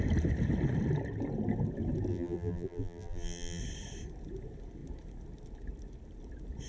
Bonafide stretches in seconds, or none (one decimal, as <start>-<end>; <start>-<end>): 0.0-2.1; 3.6-6.7